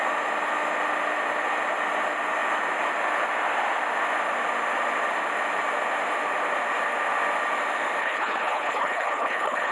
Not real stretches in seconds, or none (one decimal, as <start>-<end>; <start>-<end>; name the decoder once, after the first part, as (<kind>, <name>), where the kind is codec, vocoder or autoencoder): 8.0-9.7 (codec, HILCodec)

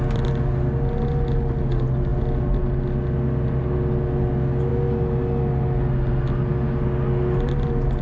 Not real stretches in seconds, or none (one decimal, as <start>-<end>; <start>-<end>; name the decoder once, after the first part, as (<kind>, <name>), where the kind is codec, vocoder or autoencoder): none

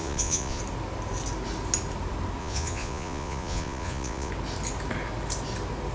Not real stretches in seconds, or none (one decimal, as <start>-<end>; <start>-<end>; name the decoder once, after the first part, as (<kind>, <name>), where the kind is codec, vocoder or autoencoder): 0.0-0.6 (vocoder, Vocos); 2.4-4.3

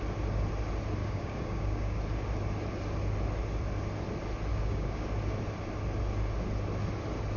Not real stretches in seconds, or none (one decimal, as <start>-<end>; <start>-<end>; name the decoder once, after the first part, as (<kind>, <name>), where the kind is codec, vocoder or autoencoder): 1.0-2.0 (codec, DAC); 4.5-5.1

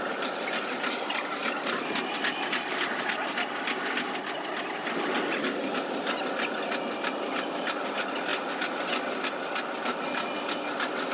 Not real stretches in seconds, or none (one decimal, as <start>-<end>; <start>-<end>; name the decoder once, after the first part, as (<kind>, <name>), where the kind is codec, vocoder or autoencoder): none

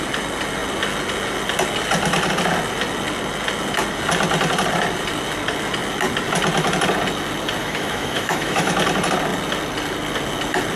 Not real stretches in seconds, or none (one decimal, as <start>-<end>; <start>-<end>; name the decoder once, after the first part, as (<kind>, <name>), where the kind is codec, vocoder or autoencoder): 7.6-8.7 (autoencoder, DAC-VAE)

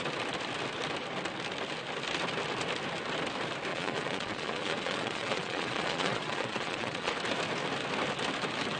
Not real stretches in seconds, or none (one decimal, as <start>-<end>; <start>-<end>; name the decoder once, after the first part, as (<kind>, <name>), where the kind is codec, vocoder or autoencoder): 3.7-7.1 (vocoder, Vocos)